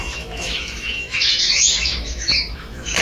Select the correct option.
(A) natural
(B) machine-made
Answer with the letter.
B